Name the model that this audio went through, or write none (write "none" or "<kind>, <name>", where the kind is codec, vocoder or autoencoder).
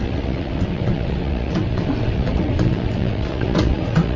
vocoder, WaveNeXt